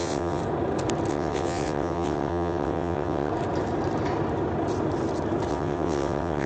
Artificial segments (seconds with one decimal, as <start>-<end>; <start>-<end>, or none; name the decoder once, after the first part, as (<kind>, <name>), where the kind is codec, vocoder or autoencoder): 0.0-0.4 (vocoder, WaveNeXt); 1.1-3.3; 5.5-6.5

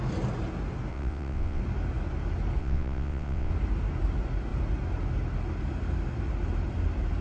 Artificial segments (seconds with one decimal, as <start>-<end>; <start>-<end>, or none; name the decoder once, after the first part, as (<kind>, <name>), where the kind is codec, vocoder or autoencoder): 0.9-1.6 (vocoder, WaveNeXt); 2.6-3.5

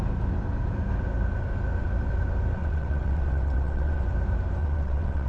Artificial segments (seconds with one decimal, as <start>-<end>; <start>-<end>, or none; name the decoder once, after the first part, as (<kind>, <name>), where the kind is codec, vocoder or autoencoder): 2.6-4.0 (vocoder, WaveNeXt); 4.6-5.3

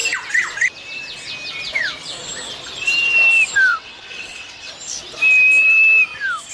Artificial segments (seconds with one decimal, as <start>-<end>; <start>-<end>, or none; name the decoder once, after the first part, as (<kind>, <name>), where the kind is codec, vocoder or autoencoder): 3.7-4.7 (vocoder, WaveNeXt)

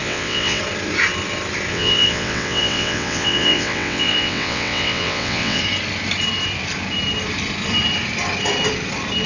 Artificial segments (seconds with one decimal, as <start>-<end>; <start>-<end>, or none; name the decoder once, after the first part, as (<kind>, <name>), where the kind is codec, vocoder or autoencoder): 0.0-0.6 (vocoder, WaveNeXt); 1.7-5.6

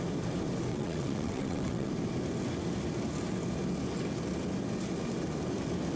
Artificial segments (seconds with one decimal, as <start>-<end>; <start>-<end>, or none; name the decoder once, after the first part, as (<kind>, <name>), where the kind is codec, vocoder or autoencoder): 0.7-1.9 (vocoder, WaveNeXt)